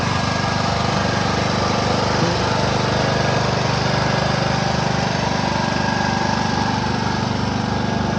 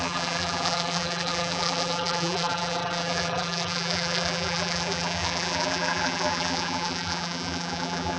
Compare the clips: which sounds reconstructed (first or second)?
second